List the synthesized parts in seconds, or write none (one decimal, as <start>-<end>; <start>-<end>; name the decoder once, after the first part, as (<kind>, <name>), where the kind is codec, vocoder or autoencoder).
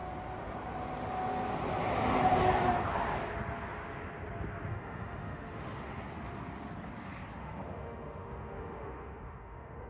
4.7-6.0 (autoencoder, DAC-VAE); 7.4-9.9